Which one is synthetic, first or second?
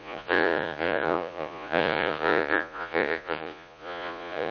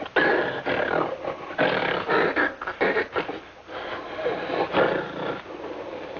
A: first